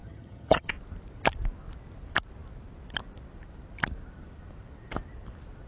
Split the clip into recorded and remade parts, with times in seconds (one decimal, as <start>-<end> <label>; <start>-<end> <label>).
0.0-0.7 remade; 0.7-5.7 recorded